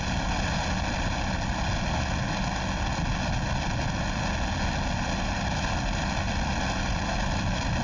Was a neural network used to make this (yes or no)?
no